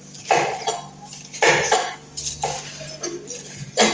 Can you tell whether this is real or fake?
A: real